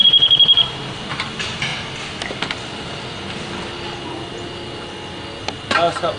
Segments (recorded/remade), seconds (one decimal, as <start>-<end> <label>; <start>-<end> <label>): 0.0-1.1 remade; 1.1-6.2 recorded